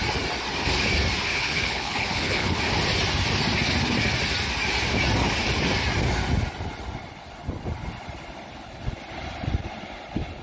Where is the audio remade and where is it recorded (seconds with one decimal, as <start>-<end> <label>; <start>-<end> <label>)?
0.0-1.3 recorded; 1.3-2.6 remade; 2.6-10.4 recorded

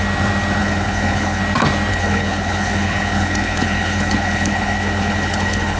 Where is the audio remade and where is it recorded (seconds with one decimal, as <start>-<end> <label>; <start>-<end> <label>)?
0.0-0.6 recorded; 0.6-1.4 remade; 1.4-1.9 recorded; 1.9-5.8 remade

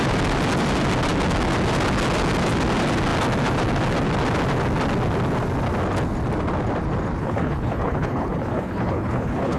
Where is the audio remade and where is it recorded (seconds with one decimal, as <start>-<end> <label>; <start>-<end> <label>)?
0.0-7.2 recorded; 7.2-9.6 remade

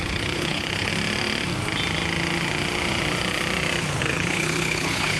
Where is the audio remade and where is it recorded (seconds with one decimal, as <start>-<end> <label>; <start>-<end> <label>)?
0.0-0.9 remade; 0.9-4.0 recorded; 4.0-5.2 remade

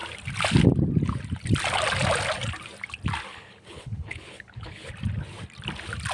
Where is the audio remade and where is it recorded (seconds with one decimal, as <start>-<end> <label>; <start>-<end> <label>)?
0.0-3.3 recorded; 3.3-4.9 remade; 4.9-6.1 recorded